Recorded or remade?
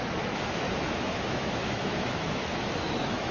remade